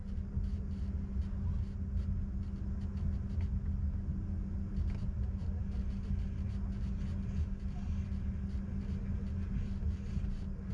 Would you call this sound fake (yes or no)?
no